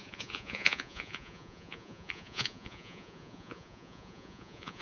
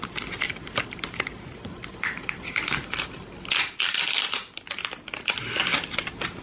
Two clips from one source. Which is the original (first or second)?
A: second